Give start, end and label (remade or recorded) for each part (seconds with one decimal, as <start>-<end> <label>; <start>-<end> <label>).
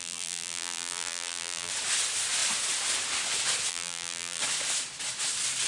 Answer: 0.0-1.7 remade; 1.7-3.7 recorded; 3.7-4.4 remade; 4.4-5.7 recorded